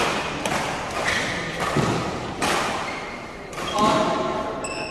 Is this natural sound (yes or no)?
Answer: yes